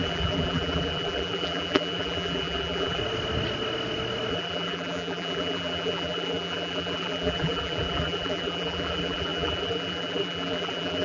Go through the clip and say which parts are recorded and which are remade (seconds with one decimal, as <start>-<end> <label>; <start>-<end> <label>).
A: 0.0-3.0 remade; 3.0-4.3 recorded; 4.3-11.0 remade